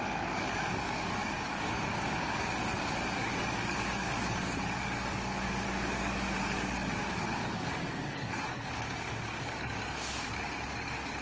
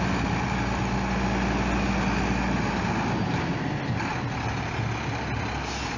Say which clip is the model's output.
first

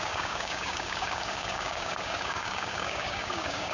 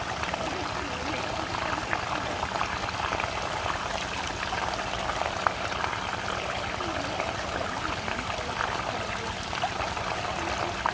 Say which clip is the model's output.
first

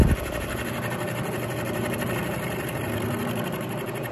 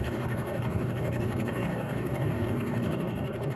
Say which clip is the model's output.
second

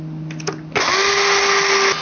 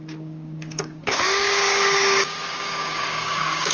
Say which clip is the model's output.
second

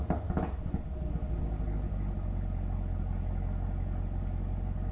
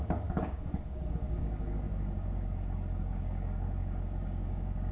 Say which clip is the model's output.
second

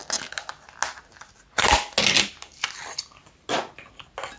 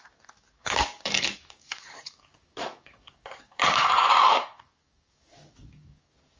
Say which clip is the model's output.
second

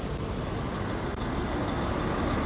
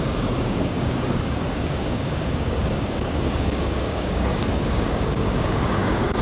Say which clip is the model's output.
second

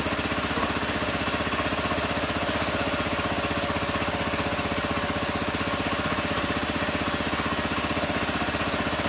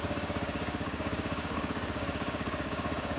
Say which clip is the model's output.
second